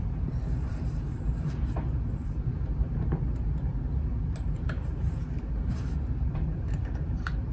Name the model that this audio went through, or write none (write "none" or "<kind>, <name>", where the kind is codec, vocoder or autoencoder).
vocoder, BigVGAN v2